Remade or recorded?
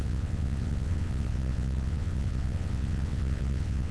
remade